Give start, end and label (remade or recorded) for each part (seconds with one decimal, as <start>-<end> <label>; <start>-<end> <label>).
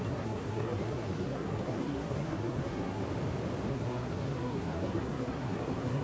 0.0-3.0 remade; 3.0-3.7 recorded; 3.7-6.0 remade